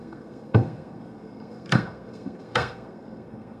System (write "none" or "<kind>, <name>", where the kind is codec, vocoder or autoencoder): codec, SNAC